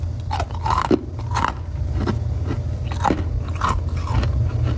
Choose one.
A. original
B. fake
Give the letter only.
A